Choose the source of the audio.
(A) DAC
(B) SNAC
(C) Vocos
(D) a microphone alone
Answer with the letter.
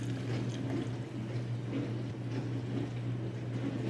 D